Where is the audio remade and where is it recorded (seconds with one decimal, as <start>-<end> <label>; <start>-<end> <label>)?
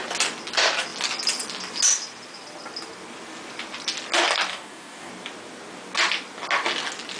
0.0-4.5 recorded; 4.5-5.1 remade; 5.1-7.2 recorded